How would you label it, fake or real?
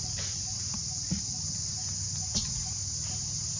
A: real